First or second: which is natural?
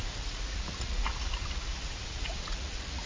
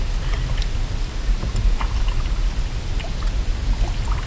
second